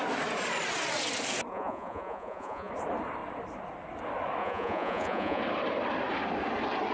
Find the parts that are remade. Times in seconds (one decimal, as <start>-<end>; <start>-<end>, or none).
1.5-2.7; 4.4-5.4